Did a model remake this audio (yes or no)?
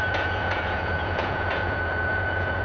yes